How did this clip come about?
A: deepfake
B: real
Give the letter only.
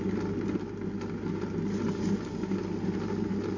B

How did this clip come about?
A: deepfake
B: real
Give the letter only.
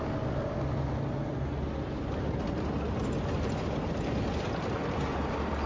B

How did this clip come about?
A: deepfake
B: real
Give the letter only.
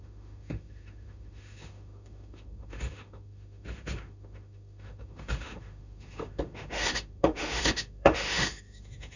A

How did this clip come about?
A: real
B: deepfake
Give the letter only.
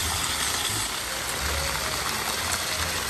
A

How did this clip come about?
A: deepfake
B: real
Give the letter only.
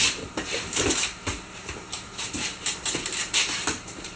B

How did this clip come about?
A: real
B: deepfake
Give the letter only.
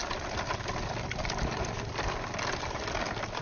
A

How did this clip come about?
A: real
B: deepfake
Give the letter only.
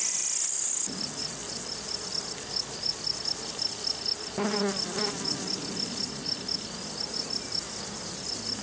A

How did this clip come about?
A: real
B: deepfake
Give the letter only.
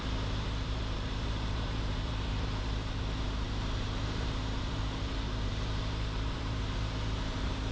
B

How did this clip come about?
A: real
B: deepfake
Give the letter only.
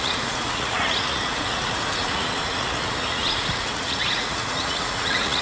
B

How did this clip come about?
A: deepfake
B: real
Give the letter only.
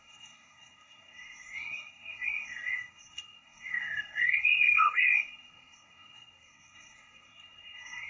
A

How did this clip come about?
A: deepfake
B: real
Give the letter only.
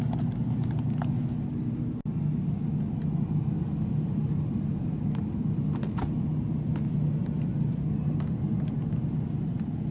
B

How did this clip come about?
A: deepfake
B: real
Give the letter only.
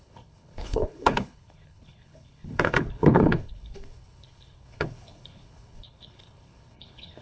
A